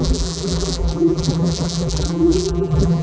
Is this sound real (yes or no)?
no